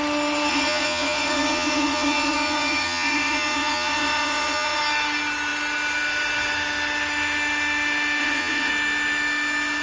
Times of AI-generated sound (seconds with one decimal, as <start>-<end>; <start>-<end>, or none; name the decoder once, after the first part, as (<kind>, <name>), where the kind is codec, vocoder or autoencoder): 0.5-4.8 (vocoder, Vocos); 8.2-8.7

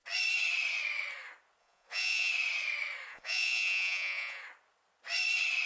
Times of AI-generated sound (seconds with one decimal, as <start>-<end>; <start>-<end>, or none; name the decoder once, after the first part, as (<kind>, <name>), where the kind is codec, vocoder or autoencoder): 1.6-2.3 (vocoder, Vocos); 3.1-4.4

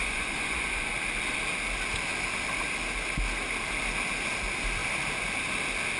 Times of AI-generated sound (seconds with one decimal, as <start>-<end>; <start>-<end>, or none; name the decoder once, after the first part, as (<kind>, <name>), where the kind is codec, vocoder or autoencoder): 0.0-0.9 (vocoder, Vocos)

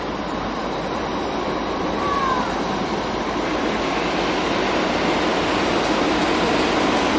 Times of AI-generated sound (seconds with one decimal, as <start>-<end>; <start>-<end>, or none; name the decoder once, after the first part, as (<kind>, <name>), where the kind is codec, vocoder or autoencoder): 0.6-2.3 (vocoder, BigVGAN v2)

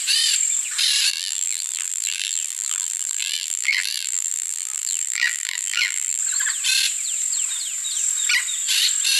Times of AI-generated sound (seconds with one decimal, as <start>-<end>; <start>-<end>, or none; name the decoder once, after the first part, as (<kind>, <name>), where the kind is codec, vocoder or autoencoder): 1.1-6.2 (vocoder, BigVGAN v2)

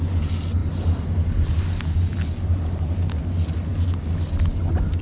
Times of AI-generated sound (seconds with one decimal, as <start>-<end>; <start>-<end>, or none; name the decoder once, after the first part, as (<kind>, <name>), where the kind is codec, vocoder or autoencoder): none